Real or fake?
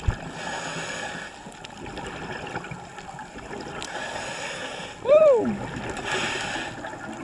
real